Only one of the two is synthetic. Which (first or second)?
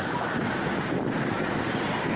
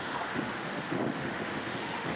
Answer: second